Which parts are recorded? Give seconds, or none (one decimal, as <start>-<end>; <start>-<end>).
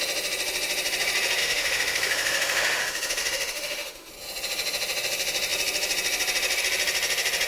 0.0-1.4; 4.1-7.5